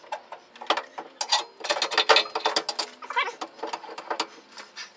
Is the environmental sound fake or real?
real